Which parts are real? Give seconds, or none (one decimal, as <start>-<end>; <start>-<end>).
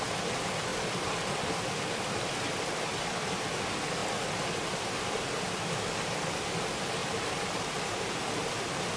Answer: 0.0-7.0; 8.1-9.0